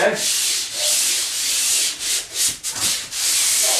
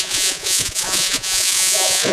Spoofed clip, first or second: second